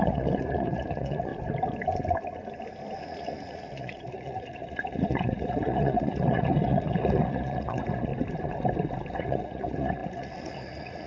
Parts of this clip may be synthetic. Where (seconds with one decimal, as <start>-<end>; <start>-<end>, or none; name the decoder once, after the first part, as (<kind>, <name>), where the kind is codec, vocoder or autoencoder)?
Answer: 0.0-1.3 (vocoder, Vocos); 3.0-8.1; 9.1-11.1